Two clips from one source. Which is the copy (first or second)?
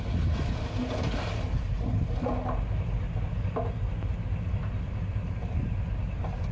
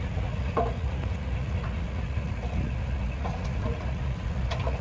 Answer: second